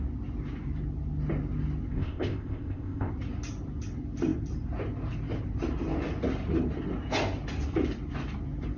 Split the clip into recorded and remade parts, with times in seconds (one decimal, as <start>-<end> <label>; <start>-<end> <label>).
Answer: 0.0-1.9 recorded; 1.9-3.1 remade; 3.1-8.8 recorded